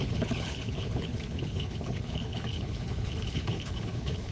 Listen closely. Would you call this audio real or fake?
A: fake